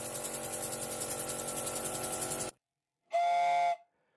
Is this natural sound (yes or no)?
yes